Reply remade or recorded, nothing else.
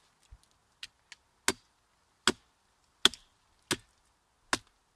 recorded